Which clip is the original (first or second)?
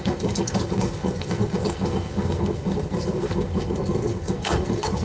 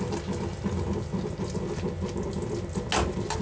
second